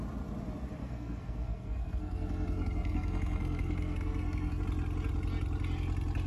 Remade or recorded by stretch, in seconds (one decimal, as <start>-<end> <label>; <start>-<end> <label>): 0.0-0.8 recorded; 0.8-4.6 remade; 4.6-6.3 recorded